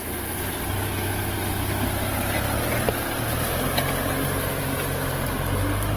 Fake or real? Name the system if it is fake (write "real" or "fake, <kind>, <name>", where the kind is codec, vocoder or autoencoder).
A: real